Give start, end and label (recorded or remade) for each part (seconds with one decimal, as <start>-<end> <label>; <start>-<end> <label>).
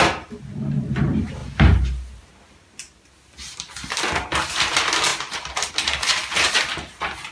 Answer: 0.0-5.1 recorded; 5.1-5.7 remade; 5.7-7.3 recorded